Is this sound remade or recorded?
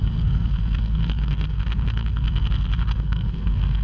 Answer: remade